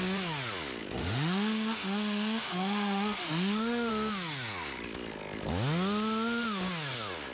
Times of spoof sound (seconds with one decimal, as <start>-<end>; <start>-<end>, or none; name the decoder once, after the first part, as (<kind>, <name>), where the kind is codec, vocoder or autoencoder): 1.0-3.9 (autoencoder, DAC-VAE)